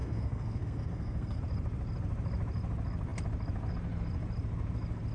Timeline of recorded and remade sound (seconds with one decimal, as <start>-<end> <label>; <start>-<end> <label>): 0.0-1.4 remade; 1.4-5.1 recorded